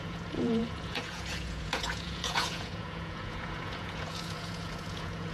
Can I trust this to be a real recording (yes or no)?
no